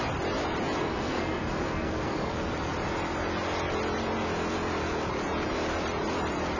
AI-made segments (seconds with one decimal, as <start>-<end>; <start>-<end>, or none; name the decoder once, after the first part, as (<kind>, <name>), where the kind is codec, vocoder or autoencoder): 0.8-2.3 (codec, SNAC)